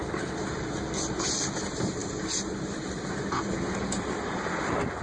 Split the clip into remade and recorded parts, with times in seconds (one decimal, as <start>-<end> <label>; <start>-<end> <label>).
0.0-5.0 recorded